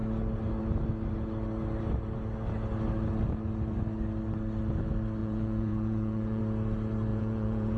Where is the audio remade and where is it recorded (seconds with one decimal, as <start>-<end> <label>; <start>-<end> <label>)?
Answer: 0.0-5.2 recorded; 5.2-6.4 remade; 6.4-7.1 recorded; 7.1-7.8 remade